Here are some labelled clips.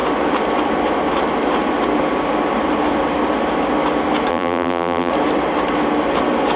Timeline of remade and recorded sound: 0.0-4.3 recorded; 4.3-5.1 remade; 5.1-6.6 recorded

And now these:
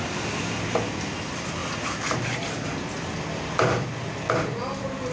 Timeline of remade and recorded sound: 0.0-5.1 recorded

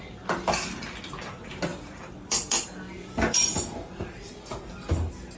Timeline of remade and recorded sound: 0.0-1.7 recorded; 1.7-4.3 remade; 4.3-5.4 recorded